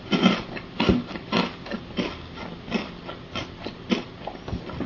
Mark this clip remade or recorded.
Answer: recorded